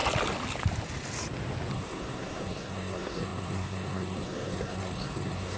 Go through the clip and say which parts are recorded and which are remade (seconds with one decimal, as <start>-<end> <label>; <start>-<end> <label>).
0.0-1.7 recorded; 1.7-5.6 remade